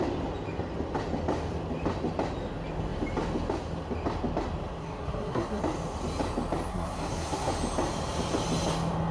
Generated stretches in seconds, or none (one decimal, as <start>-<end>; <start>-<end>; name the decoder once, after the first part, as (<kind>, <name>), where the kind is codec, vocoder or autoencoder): 4.8-5.6 (codec, SNAC); 6.7-7.5